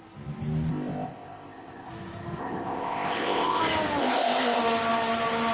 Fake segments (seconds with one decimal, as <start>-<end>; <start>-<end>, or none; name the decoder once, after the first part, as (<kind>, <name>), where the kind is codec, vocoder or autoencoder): 0.7-1.9 (codec, ZipCodec); 2.4-3.6; 4.0-4.6